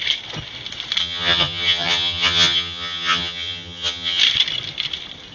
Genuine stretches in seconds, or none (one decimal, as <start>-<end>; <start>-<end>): 0.0-1.0; 4.2-5.3